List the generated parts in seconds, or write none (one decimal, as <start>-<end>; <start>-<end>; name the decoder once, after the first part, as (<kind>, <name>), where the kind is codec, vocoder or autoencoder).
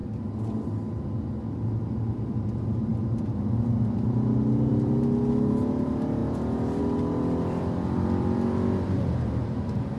0.0-10.0 (vocoder, BigVGAN v2)